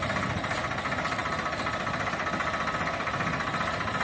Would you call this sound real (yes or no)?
yes